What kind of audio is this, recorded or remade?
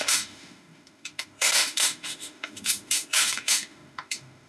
remade